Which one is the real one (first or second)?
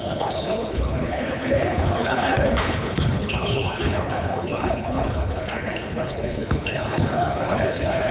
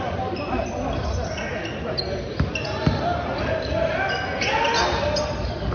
second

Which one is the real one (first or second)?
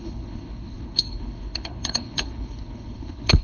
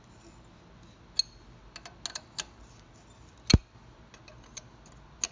second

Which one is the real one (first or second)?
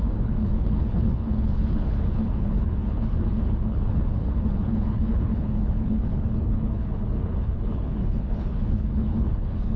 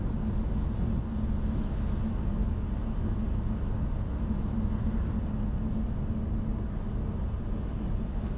second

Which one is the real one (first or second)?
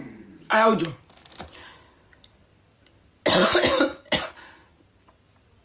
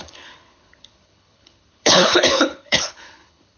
first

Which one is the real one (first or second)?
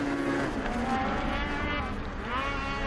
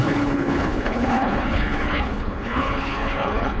first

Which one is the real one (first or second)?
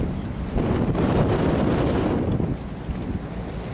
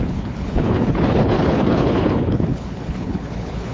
first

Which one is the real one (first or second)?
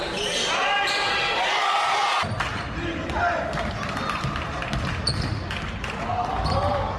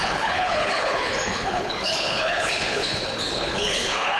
first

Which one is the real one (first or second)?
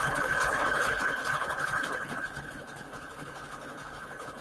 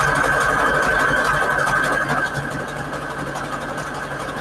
second